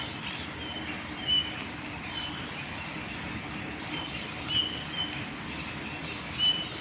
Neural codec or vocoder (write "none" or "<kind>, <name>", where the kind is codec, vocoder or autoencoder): none